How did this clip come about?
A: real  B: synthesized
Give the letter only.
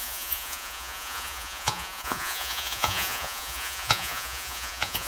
B